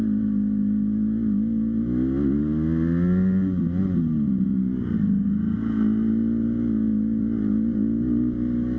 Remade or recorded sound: recorded